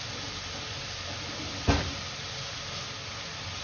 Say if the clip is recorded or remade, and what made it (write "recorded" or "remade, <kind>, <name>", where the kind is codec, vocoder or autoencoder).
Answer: recorded